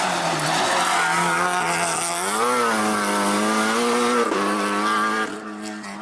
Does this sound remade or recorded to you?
recorded